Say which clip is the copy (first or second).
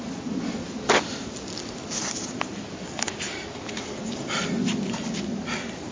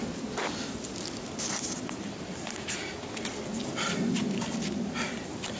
second